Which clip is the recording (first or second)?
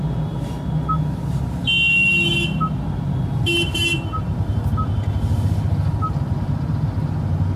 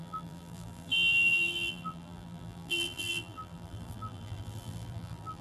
first